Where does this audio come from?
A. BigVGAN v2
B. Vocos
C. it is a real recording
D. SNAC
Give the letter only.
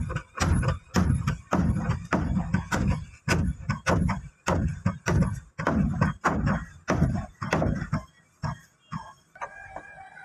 C